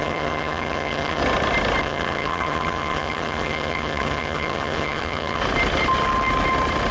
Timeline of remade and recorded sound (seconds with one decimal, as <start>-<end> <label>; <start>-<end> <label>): 0.0-1.2 remade; 1.2-1.8 recorded; 1.8-5.4 remade; 5.4-6.9 recorded